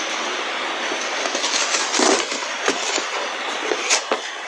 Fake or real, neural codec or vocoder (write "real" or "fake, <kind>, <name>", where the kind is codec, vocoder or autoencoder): real